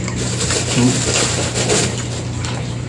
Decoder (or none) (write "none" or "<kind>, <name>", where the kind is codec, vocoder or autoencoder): none